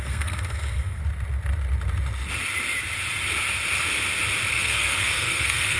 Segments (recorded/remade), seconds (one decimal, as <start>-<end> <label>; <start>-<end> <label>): 0.0-1.0 remade; 1.0-4.5 recorded; 4.5-5.8 remade